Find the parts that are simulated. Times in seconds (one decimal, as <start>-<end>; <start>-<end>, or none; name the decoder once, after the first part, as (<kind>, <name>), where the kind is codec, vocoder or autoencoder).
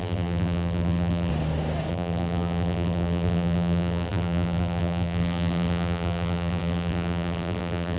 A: 0.0-1.3 (vocoder, BigVGAN v2); 1.9-8.0